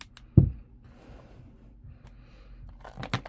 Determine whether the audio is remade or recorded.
recorded